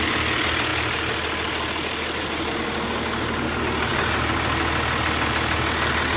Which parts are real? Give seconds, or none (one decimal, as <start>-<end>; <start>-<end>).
0.0-6.2